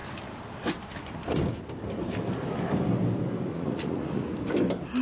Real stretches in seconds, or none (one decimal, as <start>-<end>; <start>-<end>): 0.0-3.5; 4.3-5.0